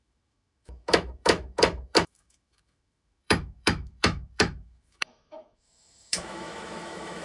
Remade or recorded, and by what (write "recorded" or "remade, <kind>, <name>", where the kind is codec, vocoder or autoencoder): remade, autoencoder, DAC-VAE